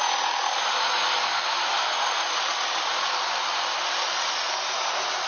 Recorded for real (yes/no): yes